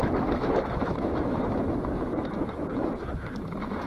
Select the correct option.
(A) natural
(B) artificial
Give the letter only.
B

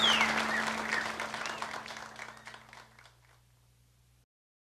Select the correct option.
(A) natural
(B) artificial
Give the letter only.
A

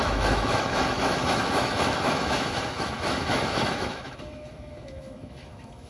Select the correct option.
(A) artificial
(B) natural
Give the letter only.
A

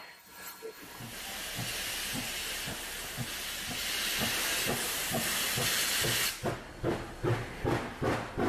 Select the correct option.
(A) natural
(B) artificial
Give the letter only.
A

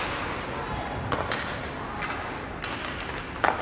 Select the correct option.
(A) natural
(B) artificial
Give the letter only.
A